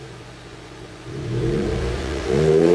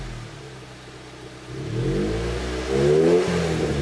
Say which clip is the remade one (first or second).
first